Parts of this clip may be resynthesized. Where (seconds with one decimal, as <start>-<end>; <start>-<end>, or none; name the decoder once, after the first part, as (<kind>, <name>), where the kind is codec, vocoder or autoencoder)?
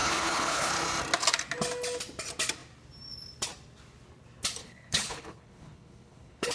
0.0-0.7 (codec, HILCodec); 4.6-6.5